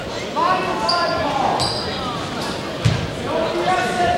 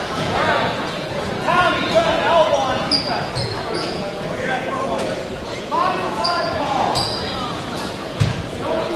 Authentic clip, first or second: first